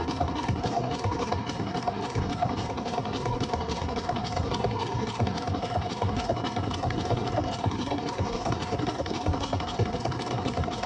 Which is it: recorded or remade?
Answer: remade